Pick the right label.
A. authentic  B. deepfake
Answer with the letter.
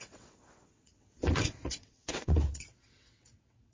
B